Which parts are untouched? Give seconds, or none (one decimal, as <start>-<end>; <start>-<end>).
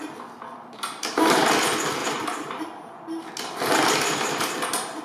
0.0-2.0; 3.3-5.0